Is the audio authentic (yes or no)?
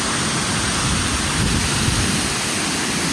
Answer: yes